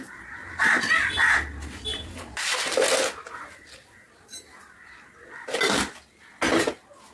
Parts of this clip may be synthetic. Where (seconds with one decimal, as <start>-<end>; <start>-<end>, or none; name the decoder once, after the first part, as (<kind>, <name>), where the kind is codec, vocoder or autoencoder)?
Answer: none